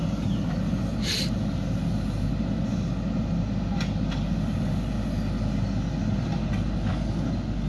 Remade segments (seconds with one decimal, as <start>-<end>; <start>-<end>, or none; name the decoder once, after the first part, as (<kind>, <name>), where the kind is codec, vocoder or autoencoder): none